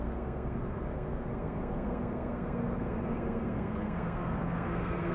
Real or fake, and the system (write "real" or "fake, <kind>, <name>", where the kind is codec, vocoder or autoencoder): fake, codec, SNAC